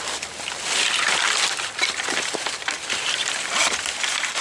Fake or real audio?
fake